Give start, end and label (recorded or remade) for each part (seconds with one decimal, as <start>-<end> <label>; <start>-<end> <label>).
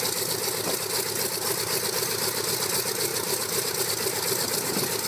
0.0-5.1 recorded